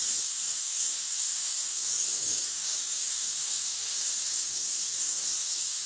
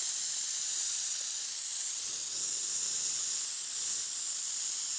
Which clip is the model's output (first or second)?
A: first